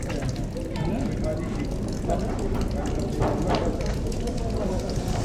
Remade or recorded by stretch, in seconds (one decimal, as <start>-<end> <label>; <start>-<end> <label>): 0.0-5.2 recorded